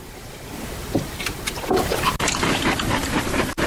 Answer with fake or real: fake